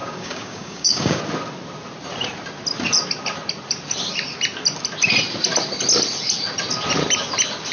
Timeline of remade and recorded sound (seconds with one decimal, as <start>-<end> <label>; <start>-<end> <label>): 0.0-1.2 remade; 1.2-7.7 recorded